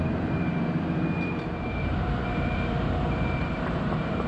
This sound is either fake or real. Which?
fake